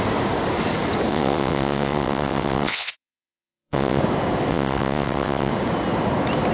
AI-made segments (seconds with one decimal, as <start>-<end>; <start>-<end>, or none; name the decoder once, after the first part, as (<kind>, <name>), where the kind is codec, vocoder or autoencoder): 1.1-4.0 (vocoder, WaveNeXt); 4.5-5.5